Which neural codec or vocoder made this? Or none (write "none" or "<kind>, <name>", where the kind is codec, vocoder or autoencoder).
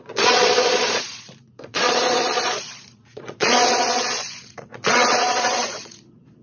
vocoder, Vocos